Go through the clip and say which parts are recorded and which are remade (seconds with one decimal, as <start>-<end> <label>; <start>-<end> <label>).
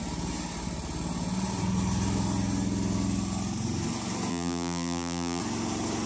0.0-4.3 recorded; 4.3-5.4 remade; 5.4-6.1 recorded